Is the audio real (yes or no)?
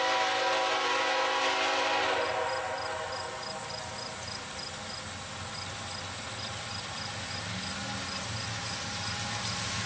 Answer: yes